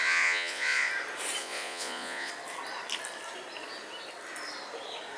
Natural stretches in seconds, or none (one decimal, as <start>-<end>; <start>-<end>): 0.9-1.4; 2.3-5.2